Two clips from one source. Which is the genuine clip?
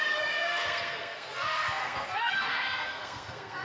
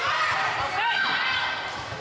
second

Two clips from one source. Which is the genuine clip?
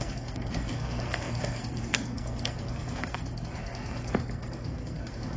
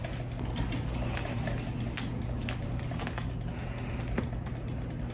second